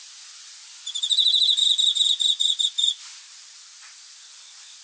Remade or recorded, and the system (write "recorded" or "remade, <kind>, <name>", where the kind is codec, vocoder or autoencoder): recorded